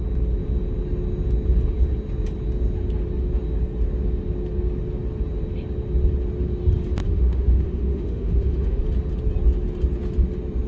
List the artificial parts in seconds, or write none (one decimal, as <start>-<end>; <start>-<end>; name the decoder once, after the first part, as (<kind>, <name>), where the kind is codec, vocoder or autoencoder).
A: 7.0-8.8 (autoencoder, DAC-VAE)